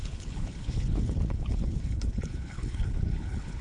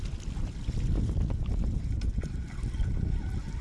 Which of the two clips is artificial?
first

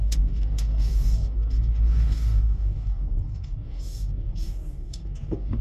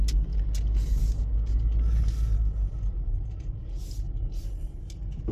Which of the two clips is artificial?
first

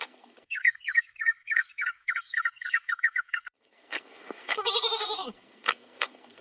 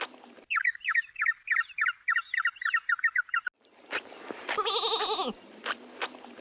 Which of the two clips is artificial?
first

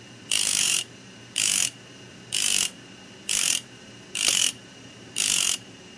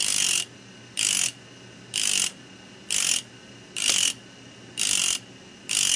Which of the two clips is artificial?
first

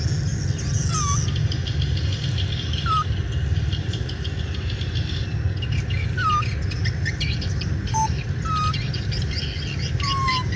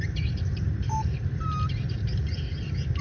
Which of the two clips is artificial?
second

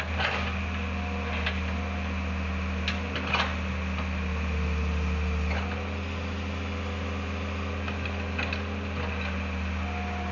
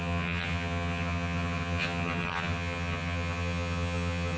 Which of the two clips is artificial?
second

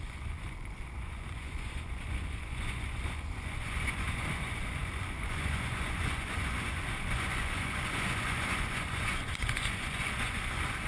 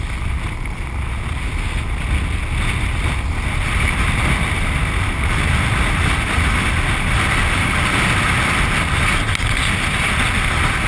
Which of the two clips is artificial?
first